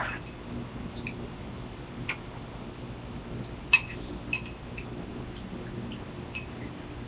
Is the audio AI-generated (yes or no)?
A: no